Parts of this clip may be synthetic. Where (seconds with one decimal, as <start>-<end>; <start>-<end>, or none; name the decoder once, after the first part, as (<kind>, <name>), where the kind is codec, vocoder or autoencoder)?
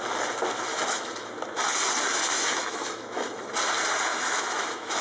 0.7-1.3 (autoencoder, DAC-VAE); 2.1-3.5; 4.1-5.0